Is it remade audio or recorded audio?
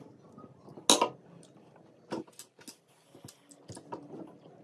recorded